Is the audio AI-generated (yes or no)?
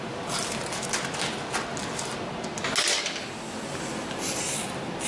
no